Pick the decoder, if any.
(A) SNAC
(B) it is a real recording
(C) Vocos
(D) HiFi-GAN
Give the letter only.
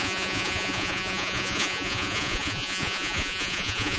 C